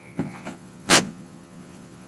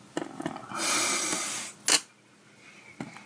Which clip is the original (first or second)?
second